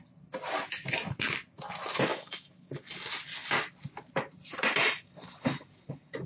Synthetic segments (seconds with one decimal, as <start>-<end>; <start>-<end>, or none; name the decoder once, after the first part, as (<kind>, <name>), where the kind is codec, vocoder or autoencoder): 2.1-2.9 (autoencoder, DAC-VAE)